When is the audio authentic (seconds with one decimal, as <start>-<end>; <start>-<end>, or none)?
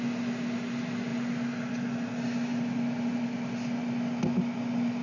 0.0-5.0